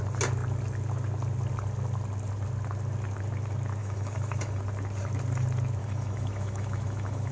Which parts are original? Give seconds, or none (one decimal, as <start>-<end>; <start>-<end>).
0.0-3.8; 4.6-5.8